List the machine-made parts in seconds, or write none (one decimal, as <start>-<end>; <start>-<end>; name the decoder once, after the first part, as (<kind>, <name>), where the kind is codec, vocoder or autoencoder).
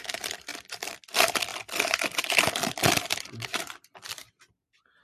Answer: 0.5-1.0 (vocoder, BigVGAN v2); 1.5-4.5